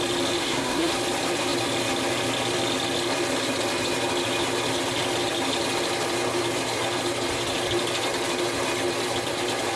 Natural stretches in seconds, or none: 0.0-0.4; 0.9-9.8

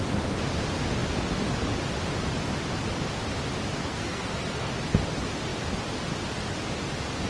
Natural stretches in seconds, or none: 0.0-3.8; 4.7-7.3

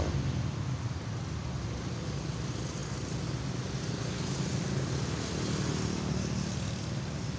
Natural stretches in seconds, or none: 0.0-7.4

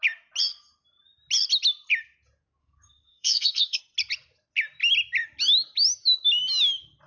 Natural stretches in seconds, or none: 0.0-2.6; 3.8-7.1